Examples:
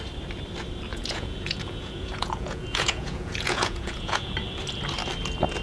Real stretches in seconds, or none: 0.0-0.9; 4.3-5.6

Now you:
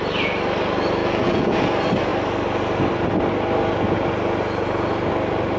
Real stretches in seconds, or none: 0.0-1.0; 1.7-5.6

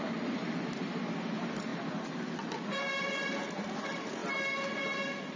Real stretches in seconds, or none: 0.0-5.4

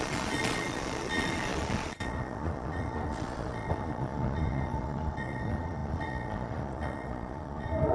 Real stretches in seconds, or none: none